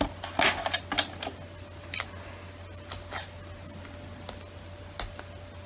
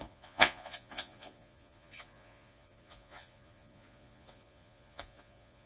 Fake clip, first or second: second